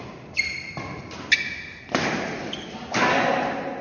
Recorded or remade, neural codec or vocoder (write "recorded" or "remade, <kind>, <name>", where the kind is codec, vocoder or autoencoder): recorded